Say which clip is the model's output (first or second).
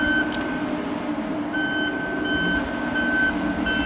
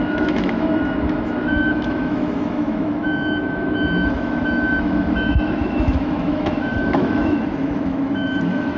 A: second